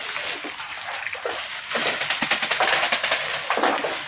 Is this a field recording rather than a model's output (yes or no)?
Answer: yes